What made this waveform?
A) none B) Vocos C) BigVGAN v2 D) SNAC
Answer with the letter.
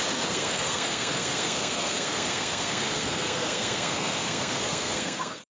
D